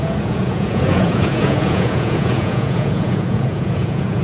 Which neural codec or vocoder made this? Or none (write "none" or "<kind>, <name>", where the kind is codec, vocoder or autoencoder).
vocoder, Vocos